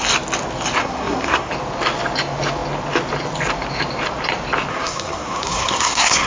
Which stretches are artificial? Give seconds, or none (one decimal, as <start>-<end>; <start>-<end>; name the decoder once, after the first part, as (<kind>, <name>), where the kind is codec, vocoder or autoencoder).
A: 0.8-1.5 (codec, SNAC); 4.7-6.3